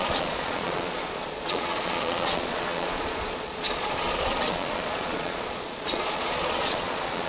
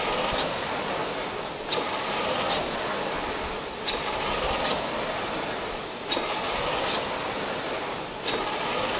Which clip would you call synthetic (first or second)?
first